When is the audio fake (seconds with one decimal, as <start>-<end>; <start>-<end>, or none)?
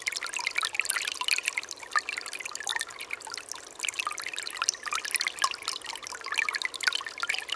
none